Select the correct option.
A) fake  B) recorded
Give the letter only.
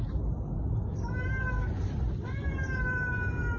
B